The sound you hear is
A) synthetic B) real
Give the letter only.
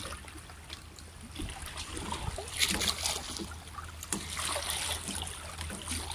B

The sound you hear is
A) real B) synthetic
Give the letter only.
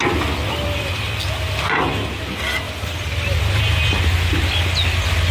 A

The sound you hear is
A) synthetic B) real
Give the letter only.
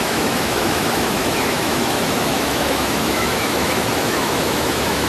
A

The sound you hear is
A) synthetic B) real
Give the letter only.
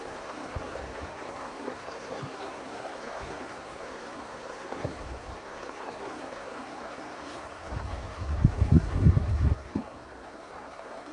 A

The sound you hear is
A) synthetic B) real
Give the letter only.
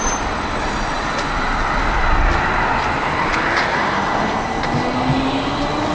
B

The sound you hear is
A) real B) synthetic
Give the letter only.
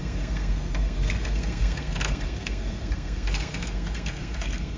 B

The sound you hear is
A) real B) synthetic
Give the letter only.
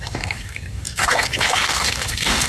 B